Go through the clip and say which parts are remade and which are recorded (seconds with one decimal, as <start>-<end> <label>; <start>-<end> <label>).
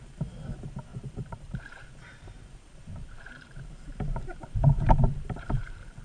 0.0-0.9 recorded; 0.9-1.6 remade; 1.6-3.0 recorded; 3.0-6.0 remade